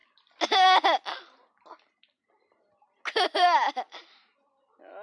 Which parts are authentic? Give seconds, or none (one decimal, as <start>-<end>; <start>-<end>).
0.0-5.0